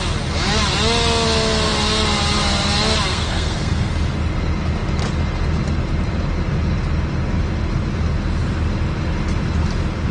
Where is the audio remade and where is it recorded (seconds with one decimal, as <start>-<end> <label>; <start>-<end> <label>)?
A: 0.0-3.1 recorded; 3.1-3.9 remade; 3.9-10.1 recorded